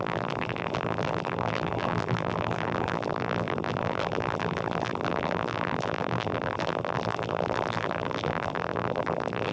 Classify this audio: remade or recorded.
remade